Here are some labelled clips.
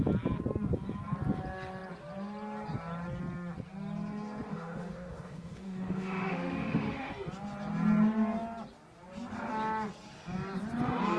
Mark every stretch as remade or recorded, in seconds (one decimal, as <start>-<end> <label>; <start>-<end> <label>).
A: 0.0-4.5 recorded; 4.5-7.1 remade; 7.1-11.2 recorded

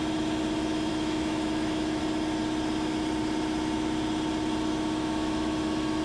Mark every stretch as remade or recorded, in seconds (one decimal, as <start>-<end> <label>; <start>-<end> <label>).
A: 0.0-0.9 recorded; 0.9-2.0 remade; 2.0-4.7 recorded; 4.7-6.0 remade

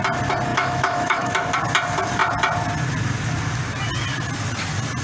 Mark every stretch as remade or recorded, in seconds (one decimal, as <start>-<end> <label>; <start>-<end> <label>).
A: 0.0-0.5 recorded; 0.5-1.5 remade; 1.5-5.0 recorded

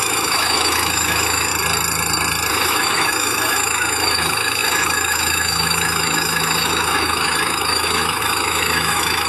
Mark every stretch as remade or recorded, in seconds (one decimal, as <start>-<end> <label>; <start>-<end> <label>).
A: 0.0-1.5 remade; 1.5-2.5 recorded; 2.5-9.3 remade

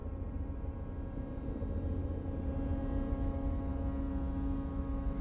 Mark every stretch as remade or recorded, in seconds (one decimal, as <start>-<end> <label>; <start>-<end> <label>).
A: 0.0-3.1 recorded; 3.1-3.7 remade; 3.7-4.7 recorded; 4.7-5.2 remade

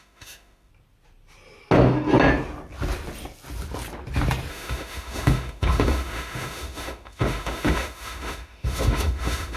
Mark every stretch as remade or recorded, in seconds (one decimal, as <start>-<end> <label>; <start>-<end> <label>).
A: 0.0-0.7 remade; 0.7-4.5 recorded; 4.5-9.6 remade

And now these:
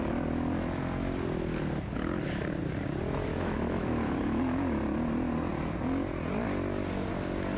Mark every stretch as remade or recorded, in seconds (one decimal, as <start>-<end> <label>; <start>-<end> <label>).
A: 0.0-3.3 recorded; 3.3-4.8 remade; 4.8-7.6 recorded

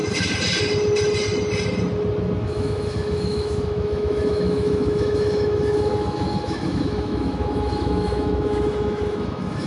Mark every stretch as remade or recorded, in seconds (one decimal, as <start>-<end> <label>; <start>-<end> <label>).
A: 0.0-2.4 recorded; 2.4-9.7 remade